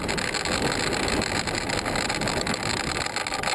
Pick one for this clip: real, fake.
real